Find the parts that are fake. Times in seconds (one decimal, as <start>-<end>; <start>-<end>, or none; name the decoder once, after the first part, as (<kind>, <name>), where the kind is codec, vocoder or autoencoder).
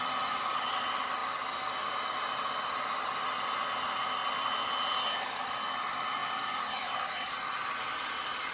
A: none